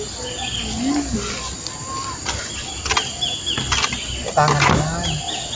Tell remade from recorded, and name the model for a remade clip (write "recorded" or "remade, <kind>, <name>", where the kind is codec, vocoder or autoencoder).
recorded